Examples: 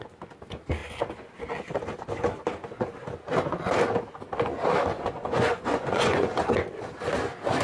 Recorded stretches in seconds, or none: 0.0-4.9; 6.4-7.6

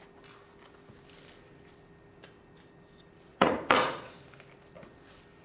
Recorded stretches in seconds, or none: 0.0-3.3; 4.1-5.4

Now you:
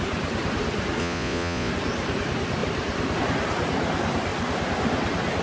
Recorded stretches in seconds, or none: 0.0-1.0; 1.7-5.4